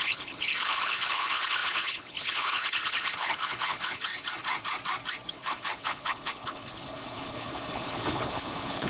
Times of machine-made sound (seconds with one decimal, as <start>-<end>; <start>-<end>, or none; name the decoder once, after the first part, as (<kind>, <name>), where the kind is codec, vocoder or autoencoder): 0.0-4.1 (codec, HILCodec); 5.3-8.9